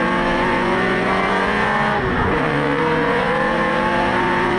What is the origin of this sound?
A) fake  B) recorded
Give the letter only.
A